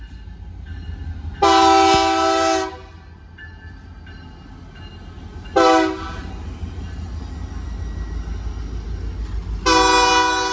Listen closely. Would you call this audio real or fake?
real